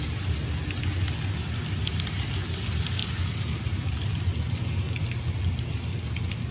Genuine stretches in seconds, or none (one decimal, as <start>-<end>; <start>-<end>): 0.0-3.0; 4.2-6.5